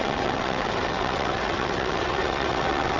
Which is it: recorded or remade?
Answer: remade